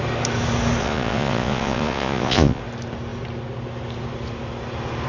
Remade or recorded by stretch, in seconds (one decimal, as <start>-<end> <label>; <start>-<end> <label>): 0.0-0.8 recorded; 0.8-2.6 remade; 2.6-5.1 recorded

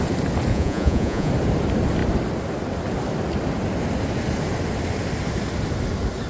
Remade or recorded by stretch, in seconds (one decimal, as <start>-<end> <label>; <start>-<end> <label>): 0.0-0.5 recorded; 0.5-1.3 remade; 1.3-6.3 recorded

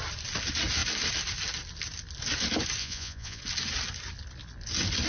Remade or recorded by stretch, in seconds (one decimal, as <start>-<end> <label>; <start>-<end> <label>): 0.0-2.8 recorded; 2.8-3.4 remade; 3.4-5.1 recorded

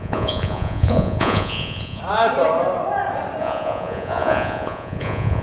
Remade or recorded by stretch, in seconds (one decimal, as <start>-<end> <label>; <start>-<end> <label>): 0.0-2.0 remade; 2.0-3.4 recorded; 3.4-5.4 remade

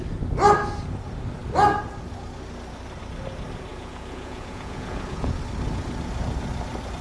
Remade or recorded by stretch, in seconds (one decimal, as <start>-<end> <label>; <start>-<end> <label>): 0.0-3.7 recorded; 3.7-5.4 remade; 5.4-7.0 recorded

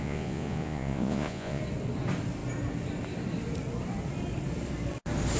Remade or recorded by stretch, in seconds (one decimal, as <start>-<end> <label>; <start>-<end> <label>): 0.0-1.6 remade; 1.6-5.4 recorded